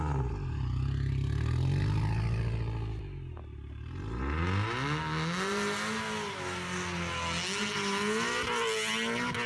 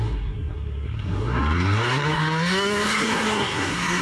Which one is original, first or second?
first